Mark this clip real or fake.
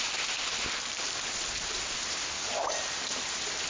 real